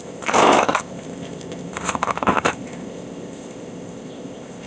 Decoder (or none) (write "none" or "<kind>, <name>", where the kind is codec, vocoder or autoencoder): codec, ZipCodec